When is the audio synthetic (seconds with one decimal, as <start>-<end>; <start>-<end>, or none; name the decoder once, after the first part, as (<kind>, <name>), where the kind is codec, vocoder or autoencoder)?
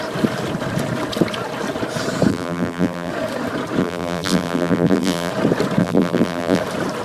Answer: 2.3-3.1 (vocoder, BigVGAN v2); 3.8-5.3; 5.8-6.6